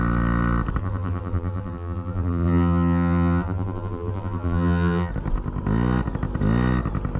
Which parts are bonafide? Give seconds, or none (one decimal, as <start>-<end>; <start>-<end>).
0.0-0.8; 5.1-7.2